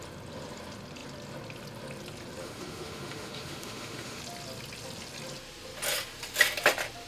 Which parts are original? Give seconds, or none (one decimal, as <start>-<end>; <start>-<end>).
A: 0.0-2.4; 4.2-7.1